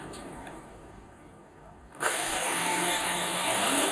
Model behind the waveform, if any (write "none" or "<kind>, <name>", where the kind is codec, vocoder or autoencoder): codec, DAC